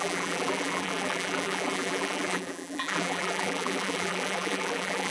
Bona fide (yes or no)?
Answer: no